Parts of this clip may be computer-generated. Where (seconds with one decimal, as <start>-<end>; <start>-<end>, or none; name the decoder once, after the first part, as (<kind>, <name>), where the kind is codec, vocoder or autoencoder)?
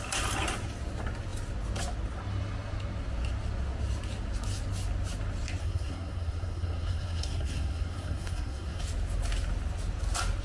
5.6-8.8 (codec, SNAC)